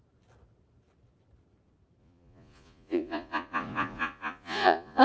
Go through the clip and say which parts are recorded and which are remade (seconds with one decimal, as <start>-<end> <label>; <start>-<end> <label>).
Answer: 0.0-2.0 recorded; 2.0-5.0 remade